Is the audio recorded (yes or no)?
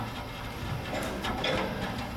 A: yes